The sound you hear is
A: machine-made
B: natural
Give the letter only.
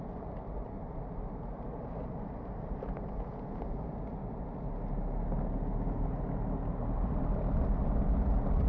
B